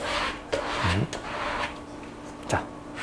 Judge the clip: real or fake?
real